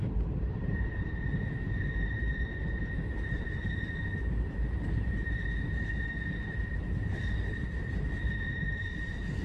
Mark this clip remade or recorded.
remade